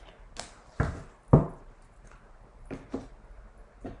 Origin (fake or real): real